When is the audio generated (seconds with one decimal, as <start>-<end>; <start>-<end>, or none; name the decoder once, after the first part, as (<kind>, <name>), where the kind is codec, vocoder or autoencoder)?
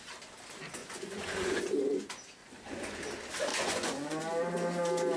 0.8-1.6 (vocoder, Vocos); 2.4-3.0; 3.5-4.2